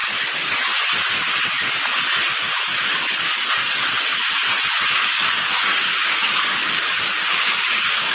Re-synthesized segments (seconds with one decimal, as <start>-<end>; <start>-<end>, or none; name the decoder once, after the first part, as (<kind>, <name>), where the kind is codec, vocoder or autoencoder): 4.9-8.1 (codec, DAC)